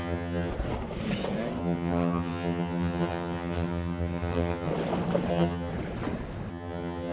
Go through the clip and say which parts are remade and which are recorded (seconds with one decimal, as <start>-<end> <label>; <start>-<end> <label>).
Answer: 0.0-0.5 remade; 0.5-1.6 recorded; 1.6-4.7 remade; 4.7-5.3 recorded; 5.3-5.7 remade; 5.7-6.5 recorded; 6.5-7.1 remade